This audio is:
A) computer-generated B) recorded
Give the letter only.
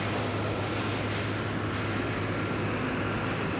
B